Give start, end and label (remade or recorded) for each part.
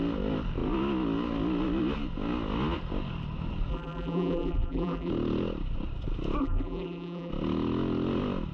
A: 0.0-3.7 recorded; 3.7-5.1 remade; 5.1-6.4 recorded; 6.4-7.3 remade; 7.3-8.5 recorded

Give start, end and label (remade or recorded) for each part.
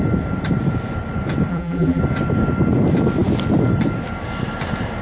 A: 0.0-1.5 recorded; 1.5-2.0 remade; 2.0-5.0 recorded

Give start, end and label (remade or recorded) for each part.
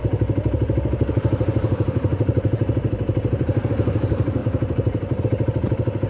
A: 0.0-3.7 remade; 3.7-4.4 recorded; 4.4-5.2 remade; 5.2-6.1 recorded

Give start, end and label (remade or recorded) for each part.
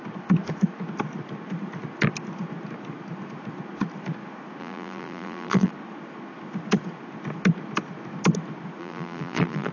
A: 0.0-4.6 recorded; 4.6-5.7 remade; 5.7-8.8 recorded; 8.8-9.7 remade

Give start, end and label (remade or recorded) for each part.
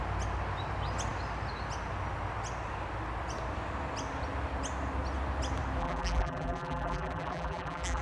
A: 0.0-5.8 recorded; 5.8-8.0 remade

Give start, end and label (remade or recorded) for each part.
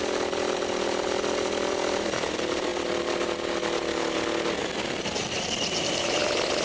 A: 0.0-2.7 remade; 2.7-6.0 recorded; 6.0-6.6 remade